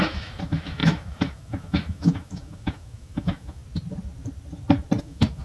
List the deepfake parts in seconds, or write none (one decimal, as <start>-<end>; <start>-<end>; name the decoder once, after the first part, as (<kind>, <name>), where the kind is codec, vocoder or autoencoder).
0.0-3.6 (autoencoder, DAC-VAE); 5.0-5.4